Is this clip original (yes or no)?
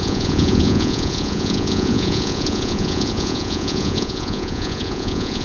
no